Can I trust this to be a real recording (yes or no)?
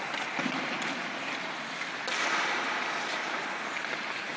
yes